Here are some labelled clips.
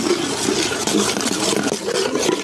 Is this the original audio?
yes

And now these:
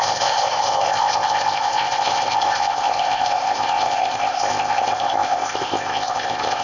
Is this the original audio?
no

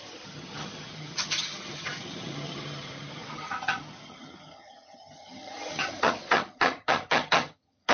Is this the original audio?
no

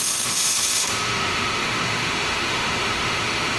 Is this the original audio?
no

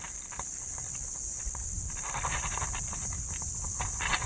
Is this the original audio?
yes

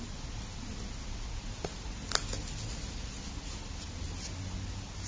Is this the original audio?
yes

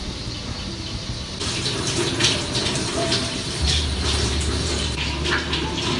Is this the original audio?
no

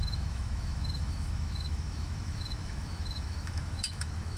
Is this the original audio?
no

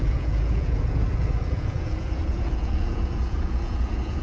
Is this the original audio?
no